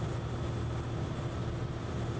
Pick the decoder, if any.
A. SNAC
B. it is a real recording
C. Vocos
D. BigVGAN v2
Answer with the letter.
B